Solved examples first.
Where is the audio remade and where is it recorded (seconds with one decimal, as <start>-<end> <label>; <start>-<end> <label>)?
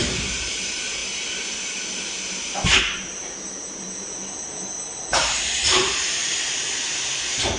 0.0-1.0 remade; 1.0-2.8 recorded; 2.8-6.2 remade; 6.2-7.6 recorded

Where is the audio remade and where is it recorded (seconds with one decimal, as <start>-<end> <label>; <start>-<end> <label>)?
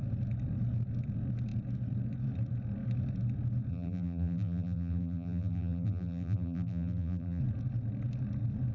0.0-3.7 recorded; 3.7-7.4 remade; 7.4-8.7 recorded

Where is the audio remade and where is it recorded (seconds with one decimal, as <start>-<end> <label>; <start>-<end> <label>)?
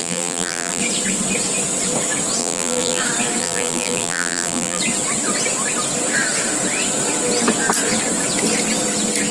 0.0-0.8 remade; 0.8-2.4 recorded; 2.4-3.0 remade; 3.0-3.4 recorded; 3.4-4.8 remade; 4.8-9.3 recorded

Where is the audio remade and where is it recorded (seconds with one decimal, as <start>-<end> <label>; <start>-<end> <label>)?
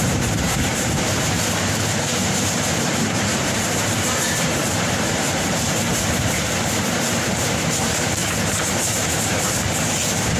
0.0-8.2 remade; 8.2-8.9 recorded; 8.9-10.4 remade